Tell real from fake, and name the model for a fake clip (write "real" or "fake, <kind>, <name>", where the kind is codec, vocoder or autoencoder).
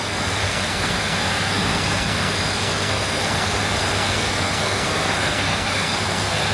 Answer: fake, codec, SNAC